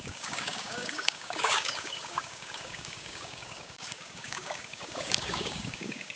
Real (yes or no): no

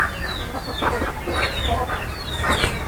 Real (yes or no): yes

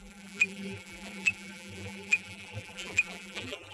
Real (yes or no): no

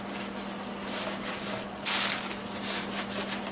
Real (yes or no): yes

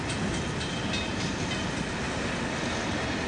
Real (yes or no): yes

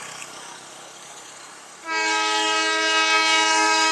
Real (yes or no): no